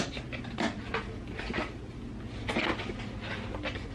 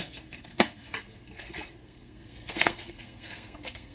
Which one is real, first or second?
first